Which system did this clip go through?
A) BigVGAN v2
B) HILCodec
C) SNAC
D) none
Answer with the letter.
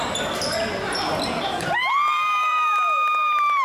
A